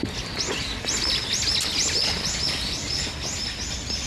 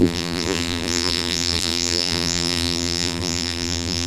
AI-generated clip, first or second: second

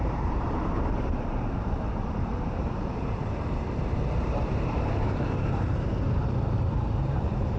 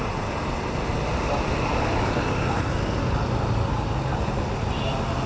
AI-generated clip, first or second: first